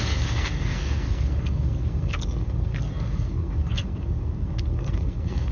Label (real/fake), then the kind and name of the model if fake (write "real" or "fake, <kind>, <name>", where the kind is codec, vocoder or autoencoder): fake, codec, SNAC